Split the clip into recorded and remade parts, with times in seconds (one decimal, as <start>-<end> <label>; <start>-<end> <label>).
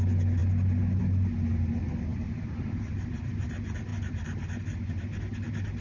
0.0-2.1 recorded; 2.1-2.8 remade; 2.8-3.9 recorded; 3.9-4.6 remade; 4.6-5.8 recorded